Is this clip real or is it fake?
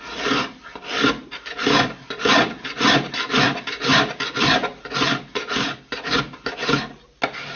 real